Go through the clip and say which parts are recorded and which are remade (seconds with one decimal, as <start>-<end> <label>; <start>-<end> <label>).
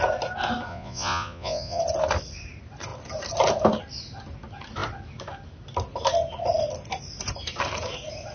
0.0-0.7 recorded; 0.7-1.8 remade; 1.8-8.3 recorded